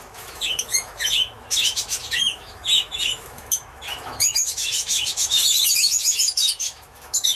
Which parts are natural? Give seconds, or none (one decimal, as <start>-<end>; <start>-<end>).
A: none